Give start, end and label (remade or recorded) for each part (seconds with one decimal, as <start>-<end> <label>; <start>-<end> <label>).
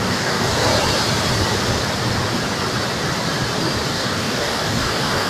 0.0-0.7 remade; 0.7-3.9 recorded; 3.9-5.3 remade